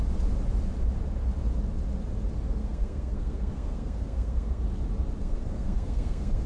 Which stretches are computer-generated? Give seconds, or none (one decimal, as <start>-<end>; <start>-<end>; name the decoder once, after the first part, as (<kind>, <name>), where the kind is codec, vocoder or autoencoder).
2.6-4.6 (codec, SNAC); 5.2-6.5